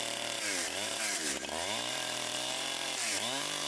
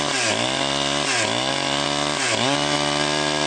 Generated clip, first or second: first